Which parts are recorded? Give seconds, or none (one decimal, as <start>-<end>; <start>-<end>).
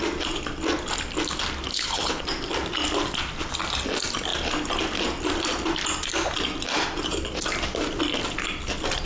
0.0-1.7; 2.2-9.1